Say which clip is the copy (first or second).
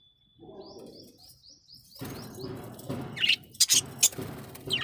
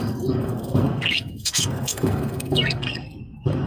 second